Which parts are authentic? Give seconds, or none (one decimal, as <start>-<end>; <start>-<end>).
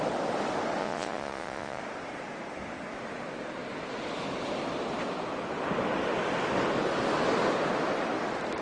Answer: 0.0-0.8; 1.8-8.6